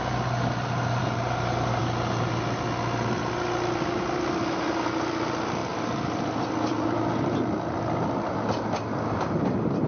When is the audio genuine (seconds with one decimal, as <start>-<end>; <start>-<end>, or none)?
0.0-5.6; 8.3-9.9